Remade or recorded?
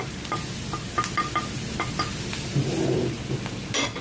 recorded